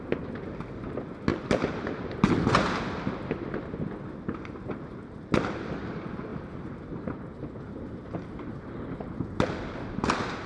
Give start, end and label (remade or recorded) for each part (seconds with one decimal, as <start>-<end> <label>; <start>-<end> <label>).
0.0-1.3 recorded; 1.3-2.1 remade; 2.1-6.3 recorded; 6.3-10.1 remade; 10.1-10.5 recorded